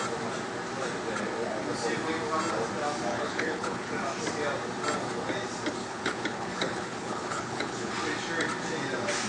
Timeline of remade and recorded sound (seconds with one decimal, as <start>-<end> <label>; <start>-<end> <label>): 0.0-3.1 recorded; 3.1-3.9 remade; 3.9-5.8 recorded; 5.8-7.9 remade; 7.9-9.3 recorded